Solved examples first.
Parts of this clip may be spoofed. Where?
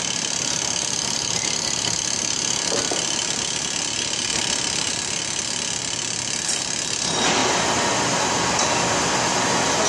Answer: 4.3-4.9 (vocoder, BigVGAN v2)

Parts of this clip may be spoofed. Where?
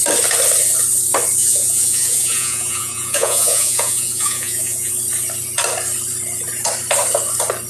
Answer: 1.4-4.9 (vocoder, Vocos)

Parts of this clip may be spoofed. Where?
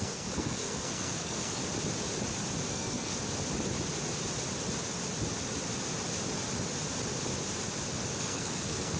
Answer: 0.0-1.6 (codec, SNAC); 2.7-3.1; 8.2-9.0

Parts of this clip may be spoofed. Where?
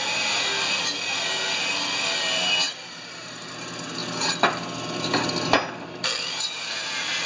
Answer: 2.8-3.5 (vocoder, BigVGAN v2)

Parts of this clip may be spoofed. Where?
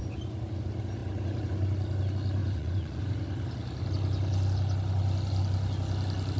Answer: 2.4-3.0 (vocoder, Vocos)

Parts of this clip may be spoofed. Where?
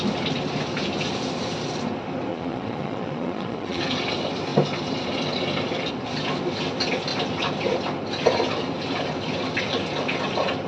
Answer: 2.3-3.8 (vocoder, Vocos)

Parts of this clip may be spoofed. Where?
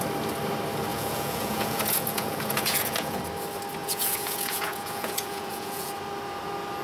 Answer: 0.9-3.2 (vocoder, Vocos); 3.8-5.9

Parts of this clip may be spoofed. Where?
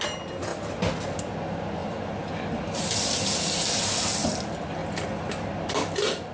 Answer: none